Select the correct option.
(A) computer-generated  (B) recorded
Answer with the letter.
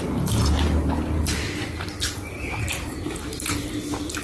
B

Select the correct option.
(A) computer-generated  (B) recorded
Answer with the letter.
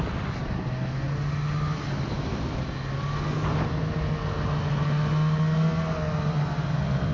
B